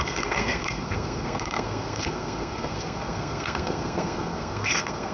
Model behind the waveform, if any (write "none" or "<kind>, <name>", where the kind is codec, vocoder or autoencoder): codec, SNAC